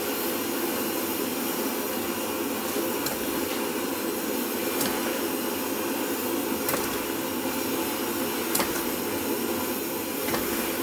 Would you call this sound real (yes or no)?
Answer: yes